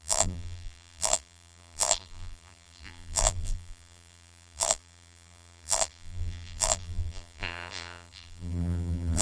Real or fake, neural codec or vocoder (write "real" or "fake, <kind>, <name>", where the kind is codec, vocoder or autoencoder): fake, vocoder, BigVGAN v2